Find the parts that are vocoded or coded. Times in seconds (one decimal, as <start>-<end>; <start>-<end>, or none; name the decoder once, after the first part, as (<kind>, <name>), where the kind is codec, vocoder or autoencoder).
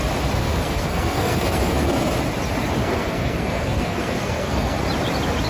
0.4-2.1 (codec, SNAC); 2.8-4.8